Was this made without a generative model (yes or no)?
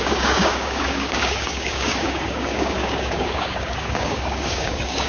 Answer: no